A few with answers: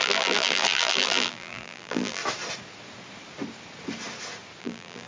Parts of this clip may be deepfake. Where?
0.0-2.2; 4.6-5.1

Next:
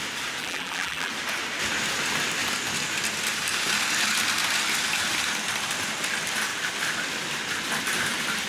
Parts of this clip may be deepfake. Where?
0.4-1.1

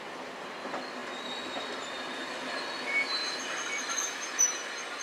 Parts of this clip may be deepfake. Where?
none

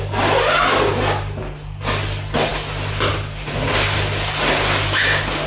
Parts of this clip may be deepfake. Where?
none

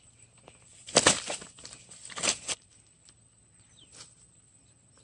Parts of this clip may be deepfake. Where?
0.7-3.7